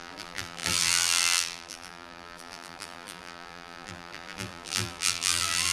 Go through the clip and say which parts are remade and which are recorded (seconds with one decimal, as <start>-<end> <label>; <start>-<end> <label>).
0.0-5.7 remade